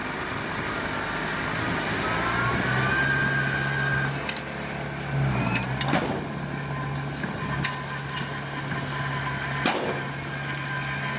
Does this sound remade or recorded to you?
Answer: recorded